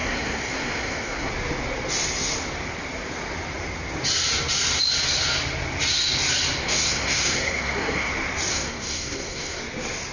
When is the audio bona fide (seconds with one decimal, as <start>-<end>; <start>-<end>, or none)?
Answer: 1.3-6.6; 8.1-8.5; 9.6-10.1